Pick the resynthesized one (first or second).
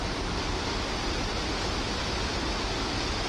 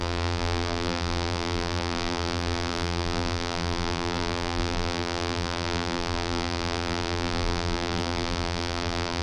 second